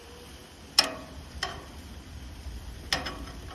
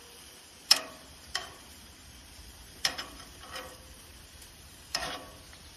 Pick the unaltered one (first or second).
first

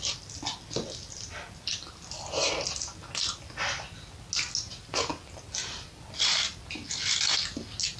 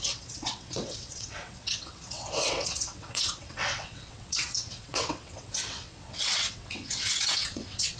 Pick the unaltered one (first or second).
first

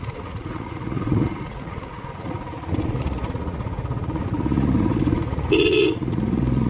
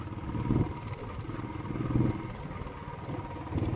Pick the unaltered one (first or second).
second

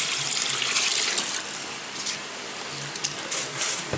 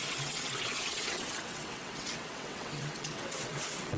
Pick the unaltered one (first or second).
first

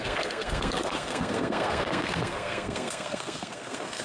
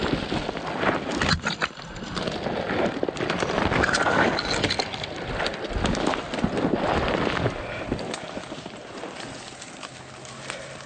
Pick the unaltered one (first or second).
second